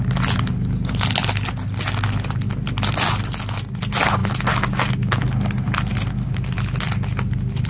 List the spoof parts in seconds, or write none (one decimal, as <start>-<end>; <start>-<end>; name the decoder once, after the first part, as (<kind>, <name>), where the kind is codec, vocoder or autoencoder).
none

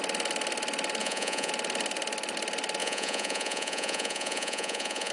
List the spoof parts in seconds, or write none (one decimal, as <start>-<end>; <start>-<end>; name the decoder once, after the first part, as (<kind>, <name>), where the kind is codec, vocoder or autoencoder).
1.0-1.5 (vocoder, Vocos); 2.8-5.1